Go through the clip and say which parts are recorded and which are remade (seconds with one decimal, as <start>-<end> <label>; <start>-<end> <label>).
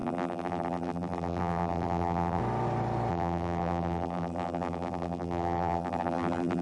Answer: 0.0-2.4 remade; 2.4-3.1 recorded; 3.1-6.6 remade